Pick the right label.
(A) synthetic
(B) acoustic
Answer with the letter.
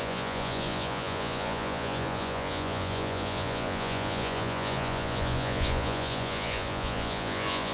A